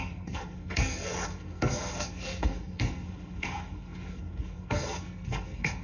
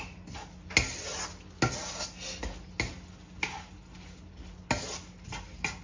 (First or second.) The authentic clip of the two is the second